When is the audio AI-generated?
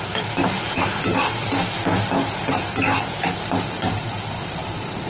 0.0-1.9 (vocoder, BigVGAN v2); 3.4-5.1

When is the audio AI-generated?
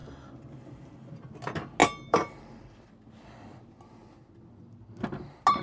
0.0-1.1 (vocoder, BigVGAN v2); 1.8-2.9